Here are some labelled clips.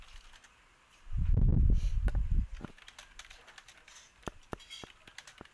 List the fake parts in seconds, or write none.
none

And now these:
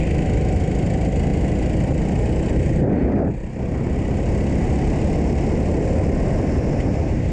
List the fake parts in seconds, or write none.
none